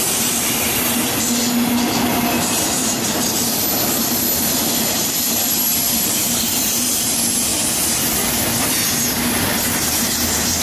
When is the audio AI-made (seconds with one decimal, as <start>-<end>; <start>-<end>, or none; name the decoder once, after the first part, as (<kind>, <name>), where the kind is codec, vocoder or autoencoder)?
0.0-7.5 (vocoder, BigVGAN v2); 9.6-10.6